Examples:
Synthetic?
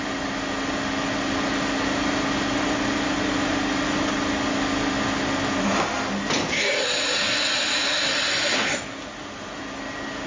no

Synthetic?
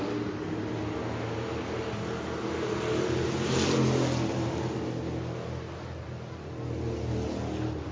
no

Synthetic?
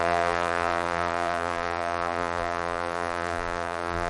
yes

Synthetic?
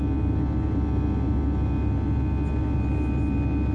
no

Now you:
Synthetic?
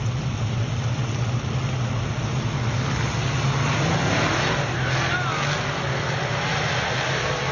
no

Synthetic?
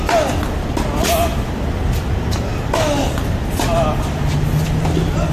no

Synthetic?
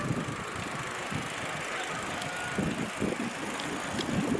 no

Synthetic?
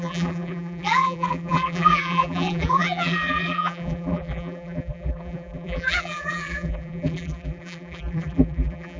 yes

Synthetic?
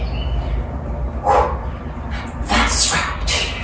no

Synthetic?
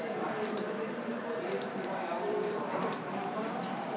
yes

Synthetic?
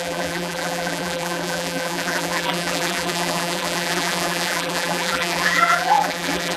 yes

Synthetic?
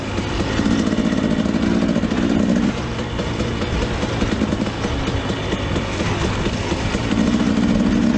no